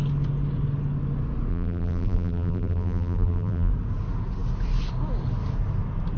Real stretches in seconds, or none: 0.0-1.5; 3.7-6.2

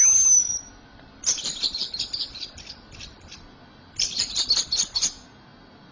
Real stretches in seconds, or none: 0.0-5.9

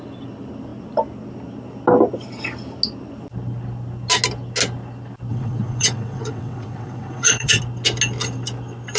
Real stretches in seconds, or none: 0.0-5.3; 7.6-9.0